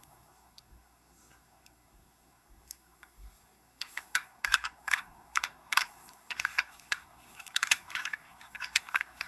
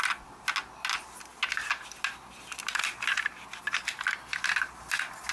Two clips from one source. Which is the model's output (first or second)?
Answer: first